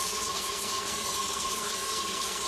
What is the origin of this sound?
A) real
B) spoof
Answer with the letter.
B